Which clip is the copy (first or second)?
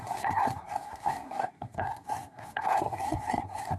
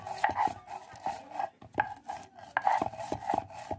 first